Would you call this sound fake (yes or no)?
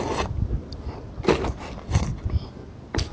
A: no